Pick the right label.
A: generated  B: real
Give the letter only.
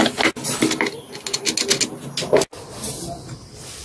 B